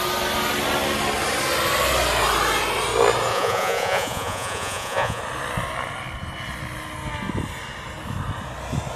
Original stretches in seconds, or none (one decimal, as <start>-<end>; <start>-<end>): 0.0-3.3; 5.2-9.0